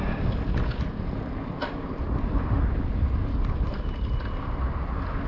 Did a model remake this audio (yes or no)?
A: no